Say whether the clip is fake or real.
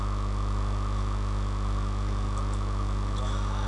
real